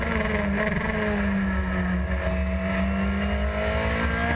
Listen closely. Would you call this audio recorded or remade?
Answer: recorded